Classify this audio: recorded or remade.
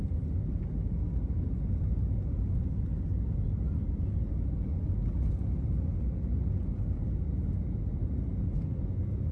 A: recorded